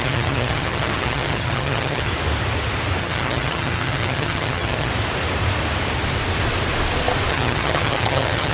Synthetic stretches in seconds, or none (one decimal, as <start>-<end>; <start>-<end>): 0.0-2.1; 3.0-4.9; 7.3-8.5